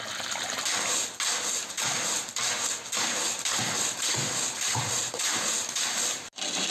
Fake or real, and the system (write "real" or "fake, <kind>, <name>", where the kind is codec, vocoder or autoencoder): real